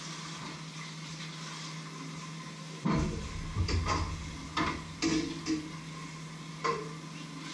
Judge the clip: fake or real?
real